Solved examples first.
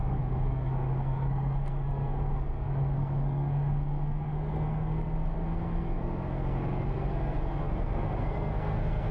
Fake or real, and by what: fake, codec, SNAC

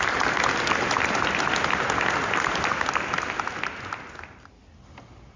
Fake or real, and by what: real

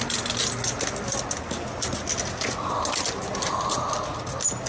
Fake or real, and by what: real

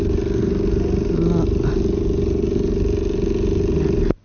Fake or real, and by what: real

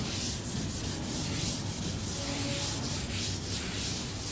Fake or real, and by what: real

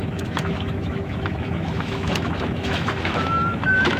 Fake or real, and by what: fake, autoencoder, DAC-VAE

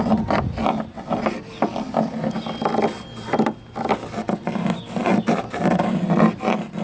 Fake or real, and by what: real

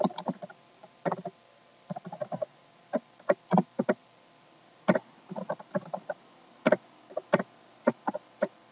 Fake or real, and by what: real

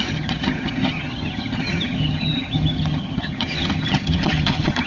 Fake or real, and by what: fake, vocoder, HiFi-GAN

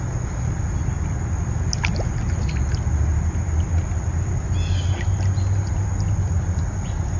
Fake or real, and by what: real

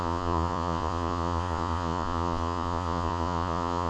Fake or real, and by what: fake, vocoder, Vocos